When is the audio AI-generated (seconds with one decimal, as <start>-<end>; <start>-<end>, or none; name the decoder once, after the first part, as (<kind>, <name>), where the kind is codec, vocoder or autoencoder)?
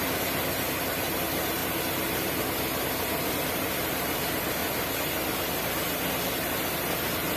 none